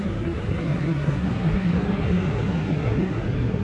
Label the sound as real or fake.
fake